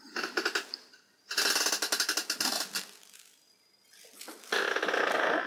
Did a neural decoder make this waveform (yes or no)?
no